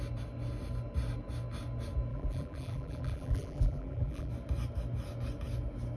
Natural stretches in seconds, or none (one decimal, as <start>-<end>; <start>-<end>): 0.0-2.1; 4.3-6.0